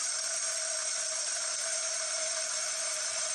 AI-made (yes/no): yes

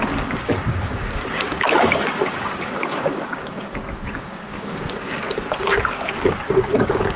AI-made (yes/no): yes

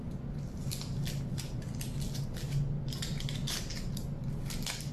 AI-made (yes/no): no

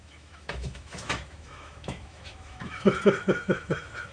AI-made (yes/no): yes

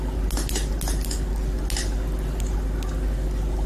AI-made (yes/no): no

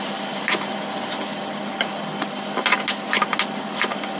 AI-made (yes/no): no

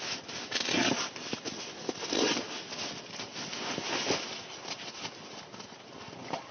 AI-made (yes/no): no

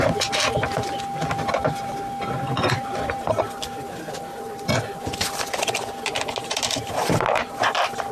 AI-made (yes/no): no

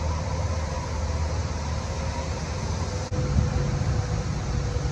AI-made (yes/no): no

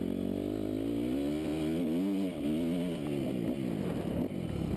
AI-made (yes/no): no